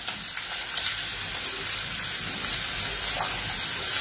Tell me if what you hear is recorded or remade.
recorded